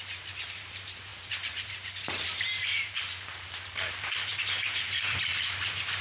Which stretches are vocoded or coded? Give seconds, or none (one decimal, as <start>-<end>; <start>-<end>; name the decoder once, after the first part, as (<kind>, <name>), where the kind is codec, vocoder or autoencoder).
0.0-6.0 (vocoder, BigVGAN v2)

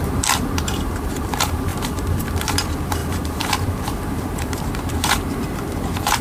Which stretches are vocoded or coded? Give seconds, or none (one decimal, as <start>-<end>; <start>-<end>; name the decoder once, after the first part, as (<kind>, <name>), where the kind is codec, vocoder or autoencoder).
0.0-6.2 (vocoder, BigVGAN v2)

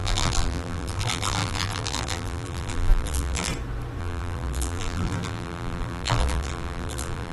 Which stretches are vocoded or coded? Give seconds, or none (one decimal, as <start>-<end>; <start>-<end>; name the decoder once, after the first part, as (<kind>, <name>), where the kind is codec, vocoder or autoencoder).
0.0-3.5 (vocoder, BigVGAN v2); 4.0-7.3

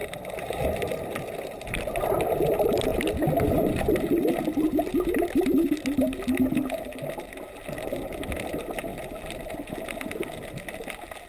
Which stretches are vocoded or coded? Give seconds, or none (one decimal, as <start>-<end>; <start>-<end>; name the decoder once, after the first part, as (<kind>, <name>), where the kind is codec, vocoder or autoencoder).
0.0-2.1 (vocoder, BigVGAN v2); 8.9-9.5